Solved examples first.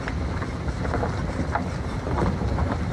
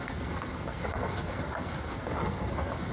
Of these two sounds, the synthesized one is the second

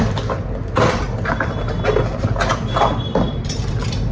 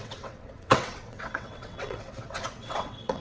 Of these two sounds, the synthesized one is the second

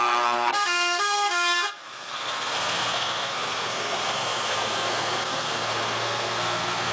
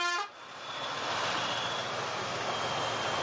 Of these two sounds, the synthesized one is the first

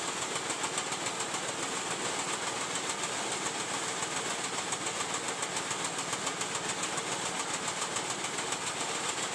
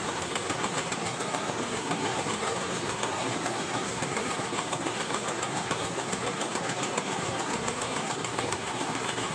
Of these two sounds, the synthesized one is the second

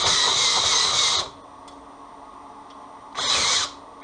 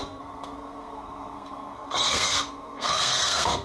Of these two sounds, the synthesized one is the second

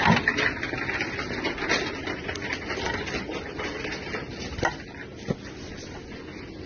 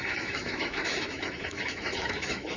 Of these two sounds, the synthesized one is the second